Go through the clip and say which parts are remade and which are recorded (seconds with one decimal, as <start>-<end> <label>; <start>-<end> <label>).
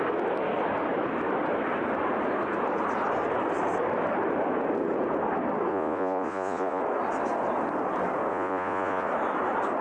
0.0-5.7 recorded; 5.7-6.8 remade; 6.8-8.3 recorded; 8.3-9.1 remade; 9.1-9.8 recorded